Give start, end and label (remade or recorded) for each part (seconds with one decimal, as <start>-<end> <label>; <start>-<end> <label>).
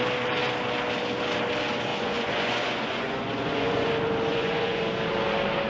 0.0-1.9 recorded; 1.9-3.9 remade; 3.9-4.3 recorded; 4.3-4.8 remade; 4.8-5.7 recorded